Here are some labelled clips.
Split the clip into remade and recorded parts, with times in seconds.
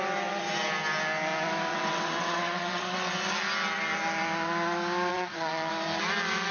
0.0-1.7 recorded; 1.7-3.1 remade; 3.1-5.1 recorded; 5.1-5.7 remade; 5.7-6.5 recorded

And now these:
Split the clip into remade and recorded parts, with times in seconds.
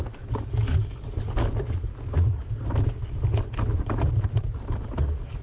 0.0-1.9 remade; 1.9-4.4 recorded; 4.4-5.4 remade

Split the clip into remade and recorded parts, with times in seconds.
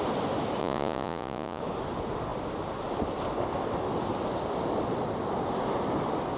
0.0-0.6 recorded; 0.6-1.6 remade; 1.6-6.4 recorded